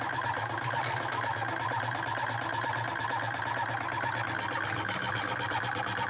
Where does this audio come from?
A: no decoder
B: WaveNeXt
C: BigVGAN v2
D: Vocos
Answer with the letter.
A